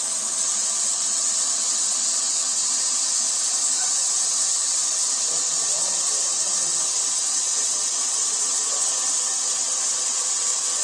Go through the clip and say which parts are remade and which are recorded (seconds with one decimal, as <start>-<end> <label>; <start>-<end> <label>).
0.0-2.6 remade; 2.6-3.3 recorded; 3.3-10.8 remade